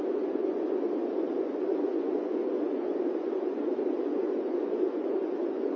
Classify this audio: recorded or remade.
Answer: remade